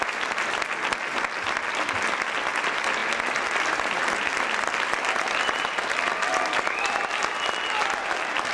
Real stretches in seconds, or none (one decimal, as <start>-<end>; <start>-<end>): 0.0-8.5